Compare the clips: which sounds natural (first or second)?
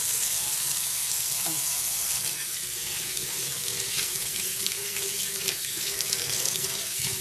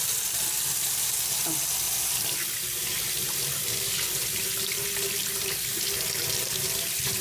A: second